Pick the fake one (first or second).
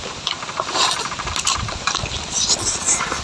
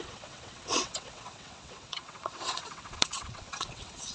second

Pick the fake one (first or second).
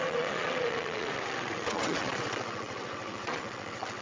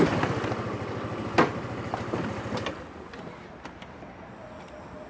first